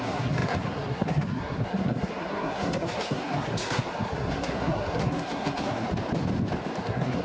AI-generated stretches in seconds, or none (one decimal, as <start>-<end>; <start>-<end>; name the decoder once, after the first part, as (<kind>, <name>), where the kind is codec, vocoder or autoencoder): 0.0-5.9 (codec, SNAC); 6.8-7.2